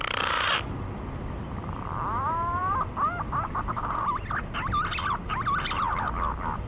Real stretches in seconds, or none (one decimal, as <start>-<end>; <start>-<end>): 0.0-6.7